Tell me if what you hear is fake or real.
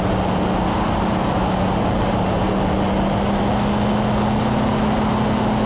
real